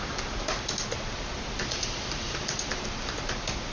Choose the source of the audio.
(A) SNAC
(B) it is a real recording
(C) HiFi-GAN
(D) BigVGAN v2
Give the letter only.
B